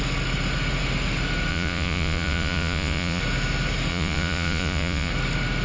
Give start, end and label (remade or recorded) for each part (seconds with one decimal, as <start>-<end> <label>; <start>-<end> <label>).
0.0-1.5 recorded; 1.5-3.2 remade; 3.2-3.9 recorded; 3.9-5.1 remade; 5.1-5.6 recorded